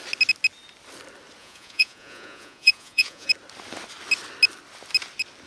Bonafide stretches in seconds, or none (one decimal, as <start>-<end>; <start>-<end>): 0.0-1.4; 3.3-5.5